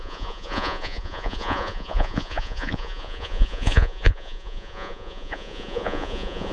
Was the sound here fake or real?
fake